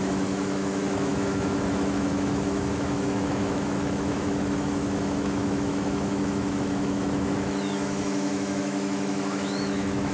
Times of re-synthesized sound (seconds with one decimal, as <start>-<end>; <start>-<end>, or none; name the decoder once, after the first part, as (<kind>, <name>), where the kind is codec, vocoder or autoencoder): 0.0-10.1 (autoencoder, DAC-VAE)